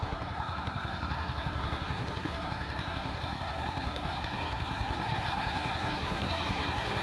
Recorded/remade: remade